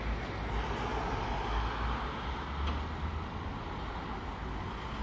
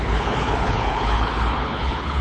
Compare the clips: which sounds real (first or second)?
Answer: first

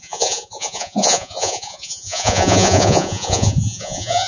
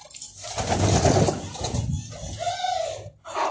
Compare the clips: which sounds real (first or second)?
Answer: second